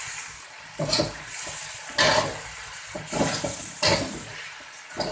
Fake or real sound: real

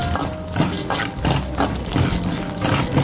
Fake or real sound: real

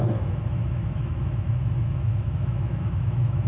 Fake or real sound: fake